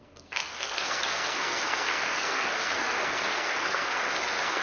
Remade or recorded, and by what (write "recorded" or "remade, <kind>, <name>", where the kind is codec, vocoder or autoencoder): remade, codec, SNAC